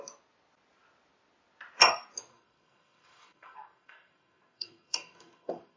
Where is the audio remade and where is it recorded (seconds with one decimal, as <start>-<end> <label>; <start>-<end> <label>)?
0.0-2.3 recorded; 2.3-5.8 remade